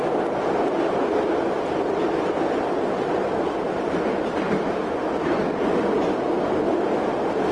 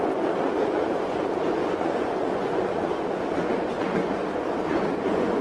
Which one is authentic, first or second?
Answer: first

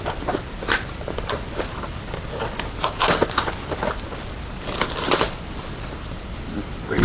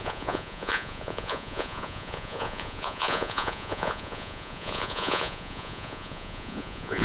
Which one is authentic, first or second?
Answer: first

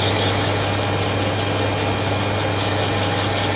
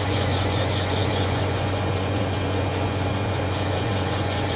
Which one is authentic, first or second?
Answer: first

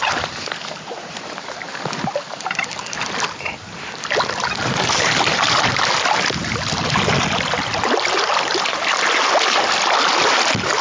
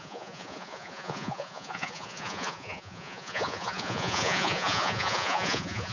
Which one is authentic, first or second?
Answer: first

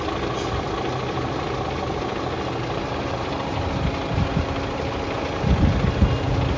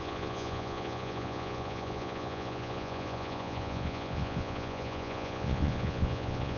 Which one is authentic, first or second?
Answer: first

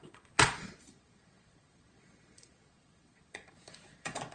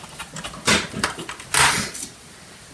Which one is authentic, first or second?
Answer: second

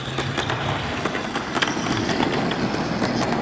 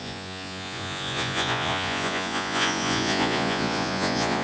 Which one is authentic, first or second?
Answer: first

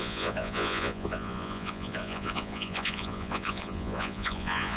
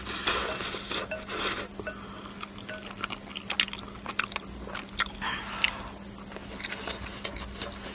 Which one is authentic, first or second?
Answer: second